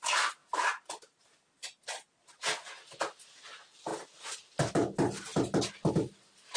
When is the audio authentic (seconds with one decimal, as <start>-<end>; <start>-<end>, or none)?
0.0-6.6